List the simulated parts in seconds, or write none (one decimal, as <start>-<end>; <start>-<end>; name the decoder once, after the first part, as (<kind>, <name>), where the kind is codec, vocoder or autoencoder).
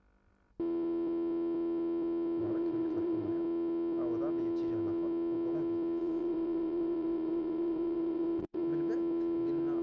2.4-3.3 (vocoder, Vocos); 6.0-8.6